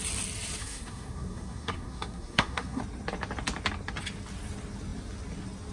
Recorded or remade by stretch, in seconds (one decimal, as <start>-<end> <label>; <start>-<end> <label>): 0.0-0.6 recorded; 0.6-2.8 remade; 2.8-5.7 recorded